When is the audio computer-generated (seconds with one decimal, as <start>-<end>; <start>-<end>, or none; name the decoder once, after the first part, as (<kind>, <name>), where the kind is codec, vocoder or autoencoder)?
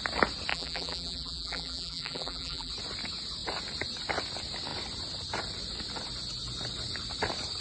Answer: 0.5-2.7 (vocoder, BigVGAN v2)